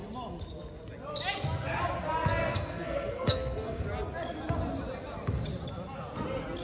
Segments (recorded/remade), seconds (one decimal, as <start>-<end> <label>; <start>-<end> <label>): 0.0-2.4 recorded; 2.4-3.8 remade; 3.8-6.6 recorded